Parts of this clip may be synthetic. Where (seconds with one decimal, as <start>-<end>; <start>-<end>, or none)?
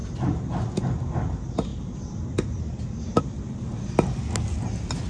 none